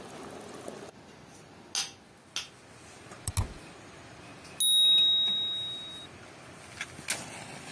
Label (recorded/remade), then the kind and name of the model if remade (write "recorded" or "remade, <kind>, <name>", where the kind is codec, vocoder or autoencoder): recorded